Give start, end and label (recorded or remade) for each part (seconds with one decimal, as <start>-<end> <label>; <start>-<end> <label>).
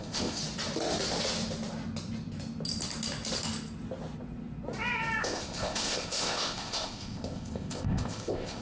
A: 0.0-0.4 remade; 0.4-5.2 recorded; 5.2-8.6 remade